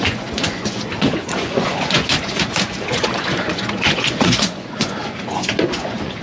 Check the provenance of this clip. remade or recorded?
remade